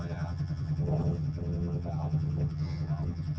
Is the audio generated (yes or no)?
yes